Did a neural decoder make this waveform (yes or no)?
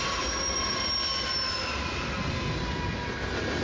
no